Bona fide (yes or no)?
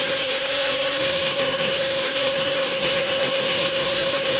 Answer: no